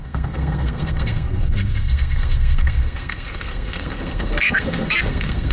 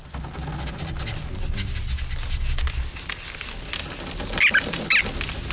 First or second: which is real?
second